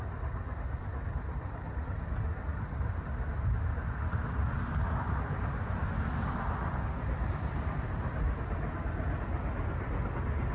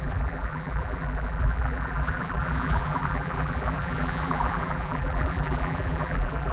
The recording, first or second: first